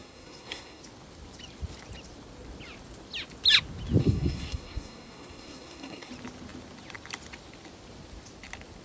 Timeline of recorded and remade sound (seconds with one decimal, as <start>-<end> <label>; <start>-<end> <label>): 0.0-0.8 remade; 0.8-4.0 recorded; 4.0-6.1 remade; 6.1-8.8 recorded